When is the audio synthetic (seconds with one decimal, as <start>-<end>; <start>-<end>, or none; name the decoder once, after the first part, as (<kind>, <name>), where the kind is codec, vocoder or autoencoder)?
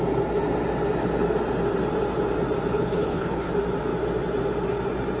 2.7-3.5 (codec, HILCodec)